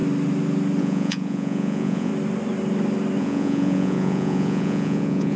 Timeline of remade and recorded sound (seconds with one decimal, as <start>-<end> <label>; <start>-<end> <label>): 0.0-0.8 recorded; 0.8-2.1 remade; 2.1-3.2 recorded; 3.2-5.4 remade